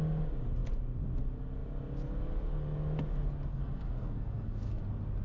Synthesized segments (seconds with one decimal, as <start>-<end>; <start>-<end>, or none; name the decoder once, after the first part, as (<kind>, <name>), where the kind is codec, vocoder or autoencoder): 3.5-4.8 (codec, SNAC)

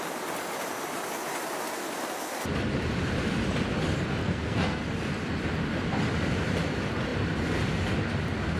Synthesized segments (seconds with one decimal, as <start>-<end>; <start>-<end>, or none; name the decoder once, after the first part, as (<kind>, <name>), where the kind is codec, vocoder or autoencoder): 4.2-4.8 (codec, SNAC)

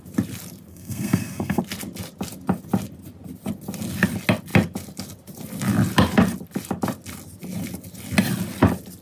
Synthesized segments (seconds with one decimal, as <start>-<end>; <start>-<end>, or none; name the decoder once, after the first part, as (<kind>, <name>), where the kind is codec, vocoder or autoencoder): 0.7-1.6 (codec, SNAC)

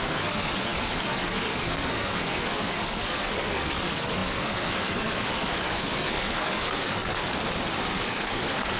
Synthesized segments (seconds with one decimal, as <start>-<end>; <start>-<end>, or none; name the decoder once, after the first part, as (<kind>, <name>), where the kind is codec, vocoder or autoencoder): 0.0-7.2 (codec, SNAC); 7.8-8.8

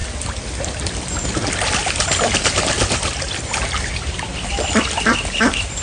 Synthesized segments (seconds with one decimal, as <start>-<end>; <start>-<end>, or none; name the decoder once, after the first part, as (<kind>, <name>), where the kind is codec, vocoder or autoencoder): none

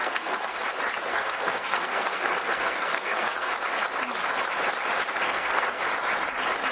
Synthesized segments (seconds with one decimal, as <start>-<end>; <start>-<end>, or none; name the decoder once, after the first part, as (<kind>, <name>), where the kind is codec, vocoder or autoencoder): 0.0-0.6 (codec, SNAC); 1.1-3.5; 5.1-5.9

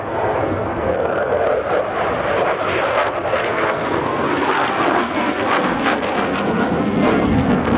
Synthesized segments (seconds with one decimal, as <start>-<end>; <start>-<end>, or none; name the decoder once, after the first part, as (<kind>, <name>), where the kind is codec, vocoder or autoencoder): 0.0-1.5 (codec, SNAC); 2.9-7.8